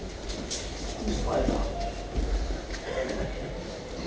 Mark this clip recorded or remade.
recorded